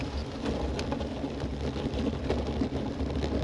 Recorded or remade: recorded